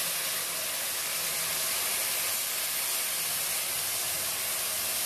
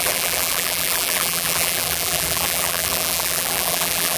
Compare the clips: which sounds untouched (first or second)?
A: first